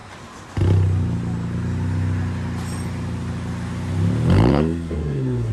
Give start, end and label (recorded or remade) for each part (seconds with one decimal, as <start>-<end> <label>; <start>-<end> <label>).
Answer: 0.0-4.5 recorded; 4.5-5.5 remade